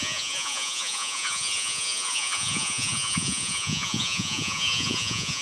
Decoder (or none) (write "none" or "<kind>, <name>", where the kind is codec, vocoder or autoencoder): vocoder, Vocos